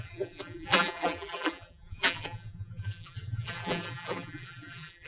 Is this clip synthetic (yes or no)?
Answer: yes